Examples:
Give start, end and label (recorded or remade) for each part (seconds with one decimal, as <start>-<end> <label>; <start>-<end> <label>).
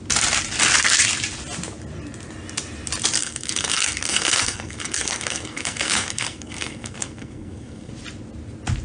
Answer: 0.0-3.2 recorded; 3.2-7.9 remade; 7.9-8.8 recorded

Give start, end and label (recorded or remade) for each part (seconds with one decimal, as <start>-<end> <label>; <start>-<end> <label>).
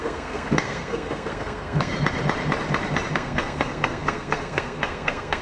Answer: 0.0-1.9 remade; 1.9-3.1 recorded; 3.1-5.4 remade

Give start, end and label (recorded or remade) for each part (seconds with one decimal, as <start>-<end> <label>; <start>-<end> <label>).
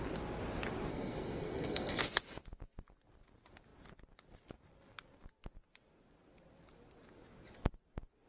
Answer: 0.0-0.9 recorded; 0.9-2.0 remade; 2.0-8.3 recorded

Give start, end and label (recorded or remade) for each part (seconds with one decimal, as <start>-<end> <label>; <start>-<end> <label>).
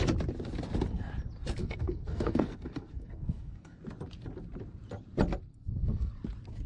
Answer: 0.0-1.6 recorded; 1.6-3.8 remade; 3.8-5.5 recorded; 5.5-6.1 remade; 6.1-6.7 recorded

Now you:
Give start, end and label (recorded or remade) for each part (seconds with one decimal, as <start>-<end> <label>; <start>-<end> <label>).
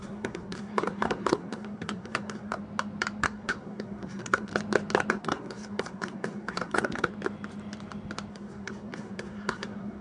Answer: 0.0-2.6 remade; 2.6-3.2 recorded; 3.2-4.5 remade; 4.5-5.1 recorded; 5.1-7.1 remade; 7.1-8.3 recorded; 8.3-10.0 remade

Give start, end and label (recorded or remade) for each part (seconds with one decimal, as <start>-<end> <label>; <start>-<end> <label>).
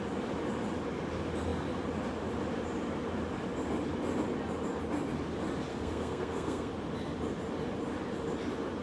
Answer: 0.0-5.7 recorded; 5.7-6.7 remade; 6.7-8.8 recorded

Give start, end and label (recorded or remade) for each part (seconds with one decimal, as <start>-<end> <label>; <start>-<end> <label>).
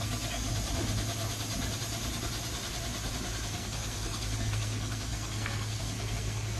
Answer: 0.0-0.5 remade; 0.5-3.5 recorded; 3.5-6.6 remade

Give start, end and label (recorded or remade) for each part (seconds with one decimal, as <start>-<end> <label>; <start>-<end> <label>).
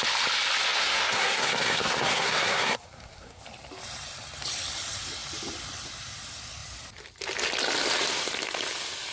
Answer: 0.0-0.8 recorded; 0.8-3.4 remade; 3.4-9.1 recorded